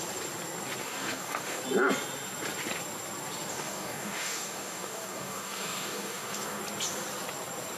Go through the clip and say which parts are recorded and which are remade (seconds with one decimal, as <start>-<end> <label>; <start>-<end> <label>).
0.0-0.8 recorded; 0.8-1.6 remade; 1.6-3.5 recorded; 3.5-6.6 remade; 6.6-7.8 recorded

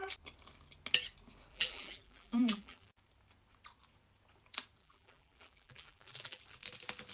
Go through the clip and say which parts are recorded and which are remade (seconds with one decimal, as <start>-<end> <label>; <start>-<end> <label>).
0.0-1.5 recorded; 1.5-3.0 remade; 3.0-4.8 recorded; 4.8-6.4 remade; 6.4-7.1 recorded